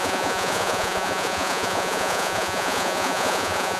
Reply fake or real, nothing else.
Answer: fake